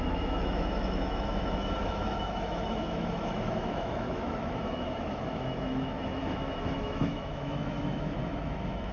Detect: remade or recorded remade